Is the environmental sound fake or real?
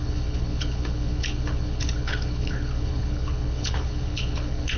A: fake